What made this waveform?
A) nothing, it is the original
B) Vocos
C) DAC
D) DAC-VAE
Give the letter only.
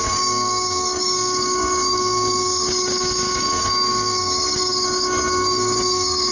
C